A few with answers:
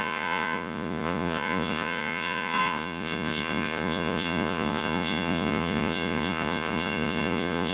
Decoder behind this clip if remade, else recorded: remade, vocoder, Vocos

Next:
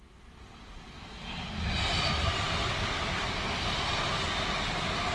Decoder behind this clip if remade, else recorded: recorded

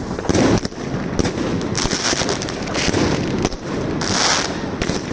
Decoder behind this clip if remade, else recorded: recorded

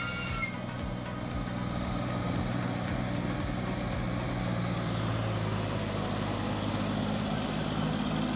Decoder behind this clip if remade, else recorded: recorded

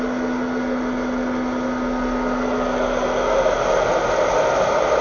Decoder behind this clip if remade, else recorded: recorded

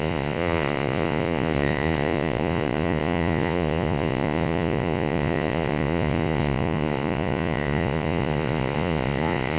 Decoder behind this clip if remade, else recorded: remade, vocoder, Vocos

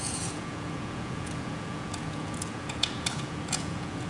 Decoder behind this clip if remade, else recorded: remade, vocoder, Vocos